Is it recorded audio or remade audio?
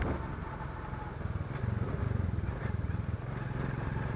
recorded